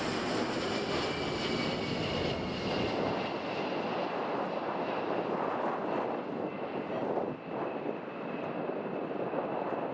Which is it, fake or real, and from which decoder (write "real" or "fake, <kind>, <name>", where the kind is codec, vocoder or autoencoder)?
real